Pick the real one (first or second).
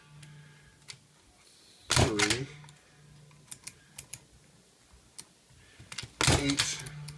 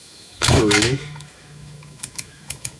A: first